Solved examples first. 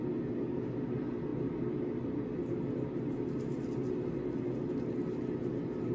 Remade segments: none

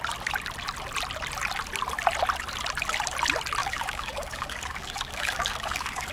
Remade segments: 3.6-6.1 (codec, DAC)

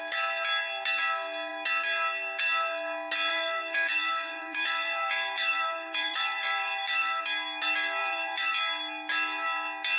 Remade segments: 3.3-7.2 (vocoder, BigVGAN v2); 8.0-8.5